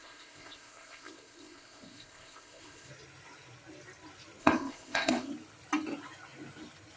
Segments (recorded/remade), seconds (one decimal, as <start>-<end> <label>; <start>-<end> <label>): 0.0-2.9 remade; 2.9-4.4 recorded; 4.4-5.3 remade; 5.3-7.0 recorded